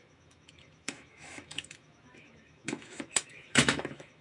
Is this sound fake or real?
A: fake